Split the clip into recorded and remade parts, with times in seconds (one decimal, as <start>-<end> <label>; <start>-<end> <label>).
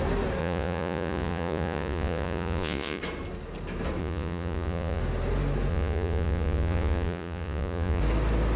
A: 0.0-0.4 recorded; 0.4-3.0 remade; 3.0-4.0 recorded; 4.0-5.0 remade; 5.0-5.7 recorded; 5.7-8.0 remade; 8.0-8.6 recorded